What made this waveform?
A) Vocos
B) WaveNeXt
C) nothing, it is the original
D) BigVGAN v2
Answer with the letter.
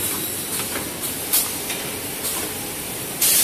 D